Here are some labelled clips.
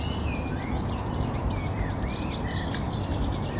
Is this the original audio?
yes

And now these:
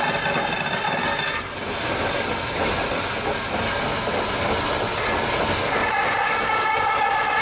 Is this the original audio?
yes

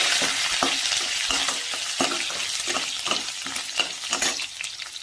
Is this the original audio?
yes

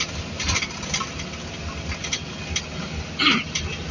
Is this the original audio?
yes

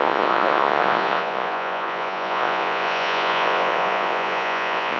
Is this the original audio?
no